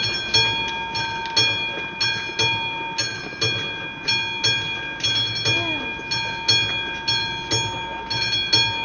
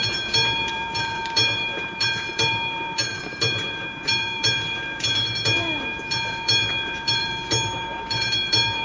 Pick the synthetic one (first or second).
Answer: second